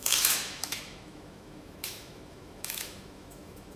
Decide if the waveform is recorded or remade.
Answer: remade